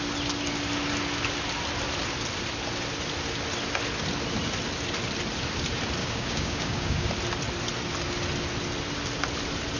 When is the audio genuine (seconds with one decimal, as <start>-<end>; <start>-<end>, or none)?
0.0-6.0; 7.1-9.8